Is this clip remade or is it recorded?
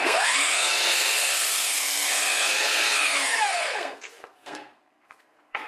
remade